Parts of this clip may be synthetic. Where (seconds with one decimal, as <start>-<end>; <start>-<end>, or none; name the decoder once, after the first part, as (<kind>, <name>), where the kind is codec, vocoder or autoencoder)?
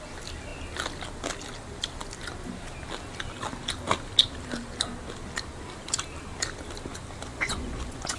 7.3-8.2 (vocoder, Vocos)